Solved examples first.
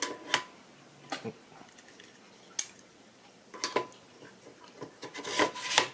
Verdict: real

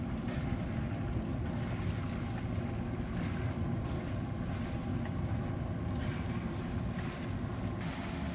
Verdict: real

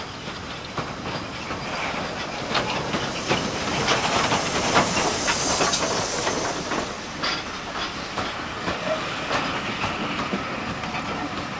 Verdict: real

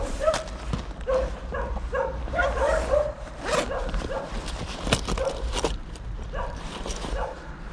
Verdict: fake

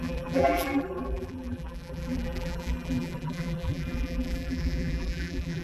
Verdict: fake